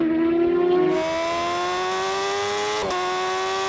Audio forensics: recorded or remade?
recorded